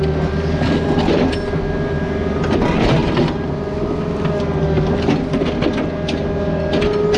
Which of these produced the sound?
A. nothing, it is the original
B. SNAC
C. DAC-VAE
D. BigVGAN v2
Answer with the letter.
A